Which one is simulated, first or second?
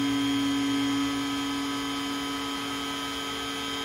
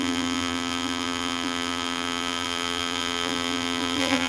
second